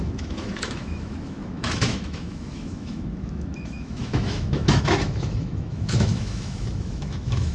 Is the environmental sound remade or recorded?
remade